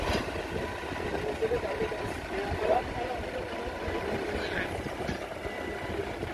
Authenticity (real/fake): real